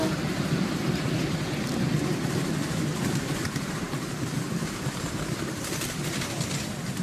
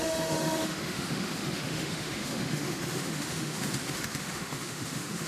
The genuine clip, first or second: first